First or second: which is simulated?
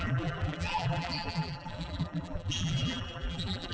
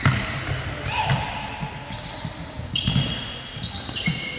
first